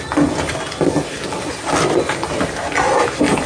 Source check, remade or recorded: recorded